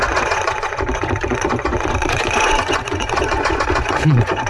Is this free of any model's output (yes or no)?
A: no